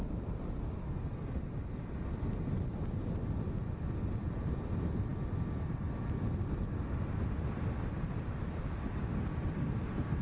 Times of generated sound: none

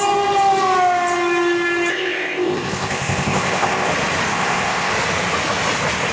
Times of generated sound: 1.9-3.9; 4.3-4.9

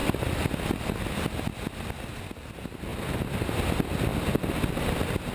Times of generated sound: 2.9-3.5; 4.1-4.7

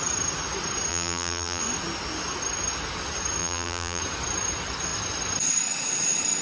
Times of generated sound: 0.9-1.6; 3.4-4.0

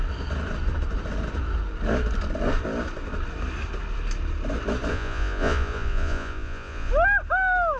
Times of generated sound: 4.9-6.9

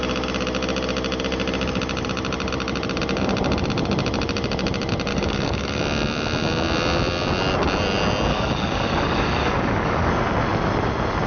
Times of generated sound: 5.1-5.8; 8.3-10.1

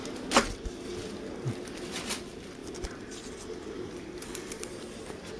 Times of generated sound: none